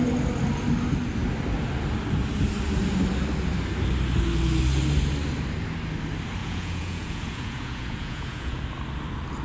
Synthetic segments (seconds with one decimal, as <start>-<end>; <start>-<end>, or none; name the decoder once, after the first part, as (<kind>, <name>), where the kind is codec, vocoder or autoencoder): 6.4-8.6 (vocoder, Vocos)